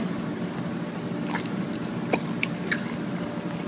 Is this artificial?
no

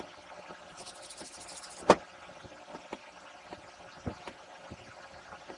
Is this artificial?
no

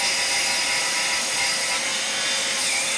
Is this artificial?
no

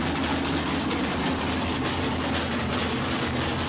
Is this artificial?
no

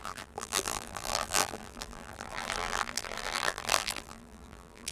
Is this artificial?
yes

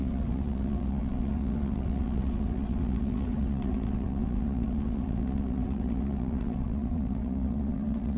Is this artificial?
yes